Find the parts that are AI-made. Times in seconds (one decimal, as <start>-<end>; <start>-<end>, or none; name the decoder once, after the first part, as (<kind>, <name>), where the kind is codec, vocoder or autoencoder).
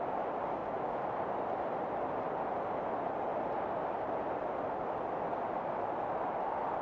none